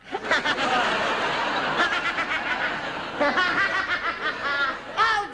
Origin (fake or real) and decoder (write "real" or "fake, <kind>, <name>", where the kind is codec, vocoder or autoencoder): real